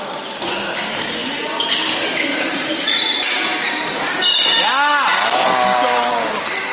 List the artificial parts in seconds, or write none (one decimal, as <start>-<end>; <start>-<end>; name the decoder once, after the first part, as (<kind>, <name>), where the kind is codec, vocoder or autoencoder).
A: none